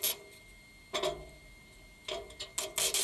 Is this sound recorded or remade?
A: recorded